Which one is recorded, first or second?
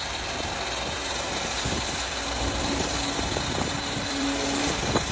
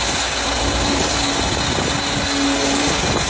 second